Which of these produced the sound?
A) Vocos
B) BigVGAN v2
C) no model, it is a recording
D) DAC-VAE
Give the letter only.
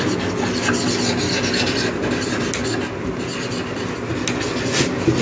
C